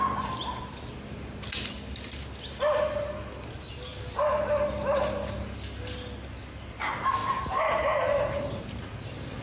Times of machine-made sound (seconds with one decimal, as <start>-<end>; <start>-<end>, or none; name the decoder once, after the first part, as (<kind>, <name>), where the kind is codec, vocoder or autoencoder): none